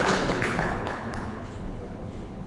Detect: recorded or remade remade